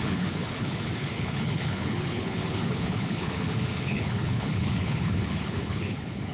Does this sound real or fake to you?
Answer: fake